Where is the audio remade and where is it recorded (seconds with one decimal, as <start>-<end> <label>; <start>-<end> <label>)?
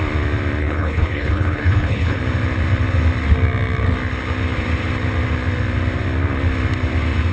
0.0-0.6 recorded; 0.6-2.2 remade; 2.2-7.3 recorded